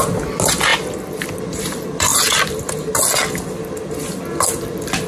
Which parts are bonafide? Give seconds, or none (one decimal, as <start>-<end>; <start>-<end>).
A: 0.0-5.1